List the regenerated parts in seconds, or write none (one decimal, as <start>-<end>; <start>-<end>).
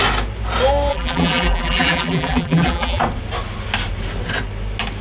0.9-3.0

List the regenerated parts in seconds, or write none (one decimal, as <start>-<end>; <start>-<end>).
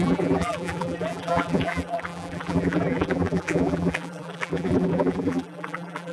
0.0-6.1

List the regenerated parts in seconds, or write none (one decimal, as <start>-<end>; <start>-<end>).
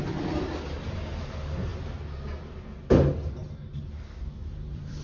0.0-0.5; 1.2-1.7; 3.8-5.0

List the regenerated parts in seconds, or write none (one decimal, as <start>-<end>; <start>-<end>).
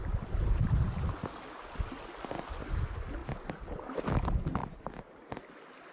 3.2-4.0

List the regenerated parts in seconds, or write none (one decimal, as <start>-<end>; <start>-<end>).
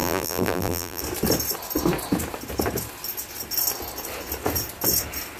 0.0-1.0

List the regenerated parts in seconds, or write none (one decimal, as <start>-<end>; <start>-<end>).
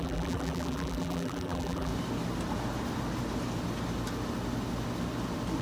0.0-1.9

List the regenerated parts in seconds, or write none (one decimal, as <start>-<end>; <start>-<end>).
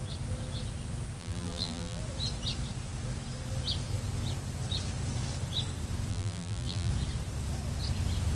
1.2-2.0; 6.1-6.9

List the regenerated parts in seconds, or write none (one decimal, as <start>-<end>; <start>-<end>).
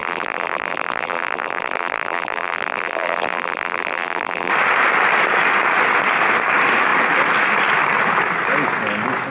0.0-4.5